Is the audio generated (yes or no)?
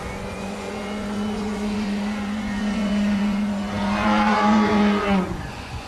yes